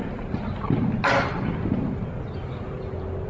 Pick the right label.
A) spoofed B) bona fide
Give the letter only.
B